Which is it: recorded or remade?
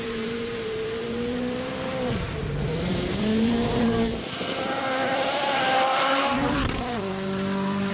remade